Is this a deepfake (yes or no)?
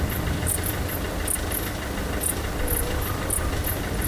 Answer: no